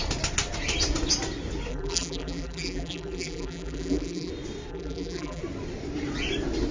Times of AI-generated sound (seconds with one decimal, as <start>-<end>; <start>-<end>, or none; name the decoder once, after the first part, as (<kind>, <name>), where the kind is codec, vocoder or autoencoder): 1.7-4.3 (vocoder, BigVGAN v2); 4.7-5.4